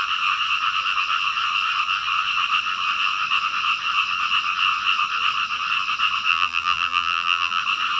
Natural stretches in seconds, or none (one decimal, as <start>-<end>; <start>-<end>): 0.0-6.3; 7.6-8.0